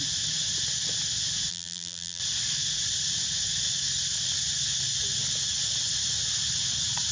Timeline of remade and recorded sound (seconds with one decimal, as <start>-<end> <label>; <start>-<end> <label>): 0.0-1.5 recorded; 1.5-2.2 remade; 2.2-7.1 recorded